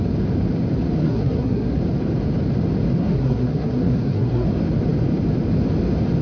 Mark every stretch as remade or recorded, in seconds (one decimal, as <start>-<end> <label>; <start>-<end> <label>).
0.0-1.0 recorded; 1.0-1.8 remade; 1.8-3.0 recorded; 3.0-4.5 remade; 4.5-6.2 recorded